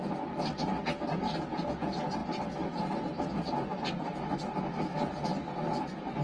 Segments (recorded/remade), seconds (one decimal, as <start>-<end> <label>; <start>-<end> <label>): 0.0-6.2 recorded